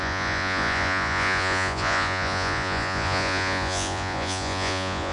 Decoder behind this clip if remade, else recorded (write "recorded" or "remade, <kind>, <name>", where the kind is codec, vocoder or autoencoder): remade, vocoder, Vocos